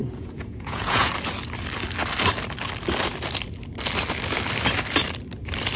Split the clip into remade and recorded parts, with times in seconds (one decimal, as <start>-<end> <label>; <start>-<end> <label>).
0.0-1.1 remade; 1.1-5.8 recorded